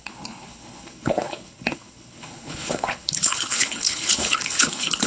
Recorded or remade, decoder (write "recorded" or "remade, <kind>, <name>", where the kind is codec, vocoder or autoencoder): remade, codec, HILCodec